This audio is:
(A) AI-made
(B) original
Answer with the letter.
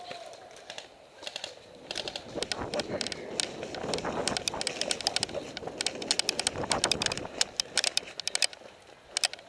B